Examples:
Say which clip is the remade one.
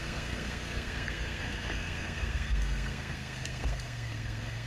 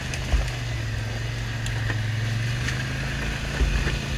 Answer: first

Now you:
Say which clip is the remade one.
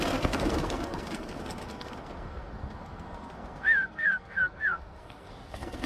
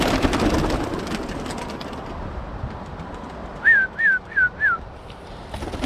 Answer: first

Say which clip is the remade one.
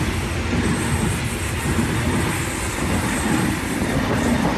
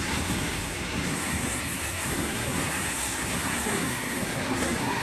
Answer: second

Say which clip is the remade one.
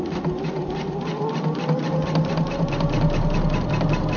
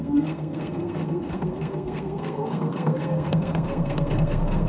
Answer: second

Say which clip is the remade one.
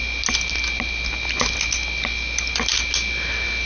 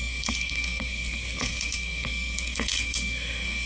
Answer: second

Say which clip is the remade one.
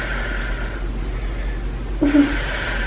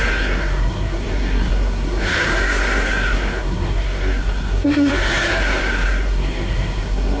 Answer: second